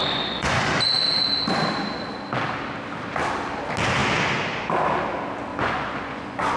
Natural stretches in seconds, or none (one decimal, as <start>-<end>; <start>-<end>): 0.7-5.5